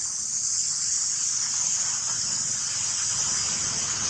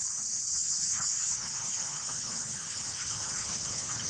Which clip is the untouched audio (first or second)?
first